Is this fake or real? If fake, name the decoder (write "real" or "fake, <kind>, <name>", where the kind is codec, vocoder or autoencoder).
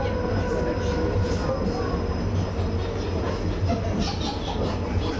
real